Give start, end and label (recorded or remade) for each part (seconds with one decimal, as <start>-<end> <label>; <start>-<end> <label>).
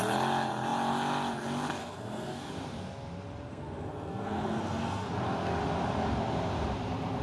0.0-1.8 recorded; 1.8-2.5 remade; 2.5-3.5 recorded; 3.5-5.1 remade; 5.1-7.2 recorded